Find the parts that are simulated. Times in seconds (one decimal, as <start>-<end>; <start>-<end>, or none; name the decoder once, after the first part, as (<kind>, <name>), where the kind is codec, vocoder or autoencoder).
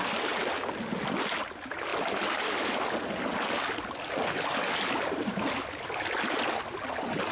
none